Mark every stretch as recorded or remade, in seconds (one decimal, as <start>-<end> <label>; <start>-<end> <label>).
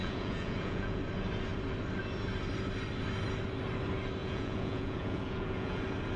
0.0-1.0 remade; 1.0-4.2 recorded; 4.2-5.8 remade; 5.8-6.2 recorded